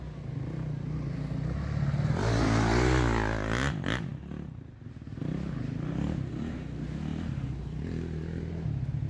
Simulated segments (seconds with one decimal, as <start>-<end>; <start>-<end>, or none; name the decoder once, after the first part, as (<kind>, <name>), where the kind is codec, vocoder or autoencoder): 7.1-8.5 (vocoder, BigVGAN v2)